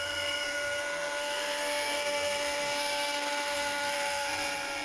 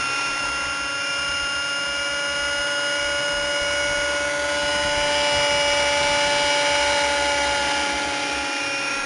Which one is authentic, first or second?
second